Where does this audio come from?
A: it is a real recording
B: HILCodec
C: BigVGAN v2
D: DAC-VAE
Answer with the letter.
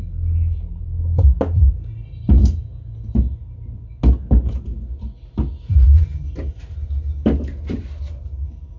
A